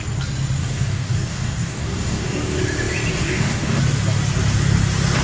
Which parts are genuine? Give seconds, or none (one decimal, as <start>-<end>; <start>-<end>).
0.0-0.6; 2.6-3.1; 3.8-5.2